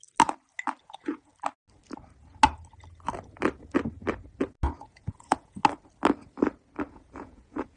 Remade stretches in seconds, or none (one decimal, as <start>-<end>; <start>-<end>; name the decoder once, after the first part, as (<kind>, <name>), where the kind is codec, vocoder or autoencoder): 0.8-1.3 (vocoder, Vocos); 4.8-5.6; 6.9-7.8